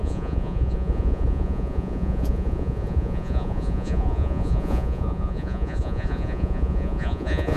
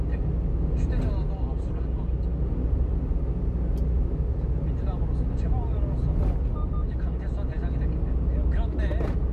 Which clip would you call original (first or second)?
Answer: second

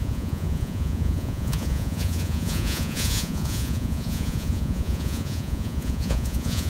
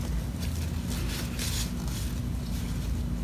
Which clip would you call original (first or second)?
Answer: second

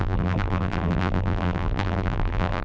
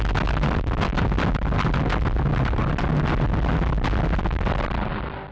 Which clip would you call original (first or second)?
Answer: second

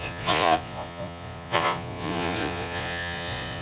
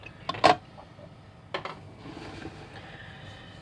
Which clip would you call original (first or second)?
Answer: second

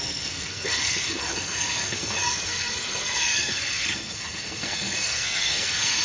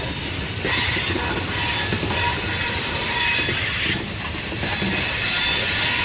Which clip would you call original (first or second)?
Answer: second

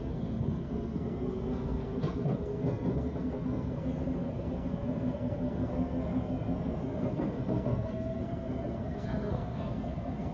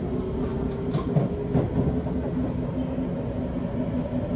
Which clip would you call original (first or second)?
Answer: second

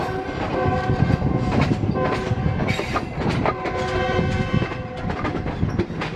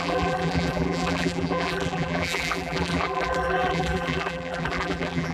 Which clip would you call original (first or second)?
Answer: first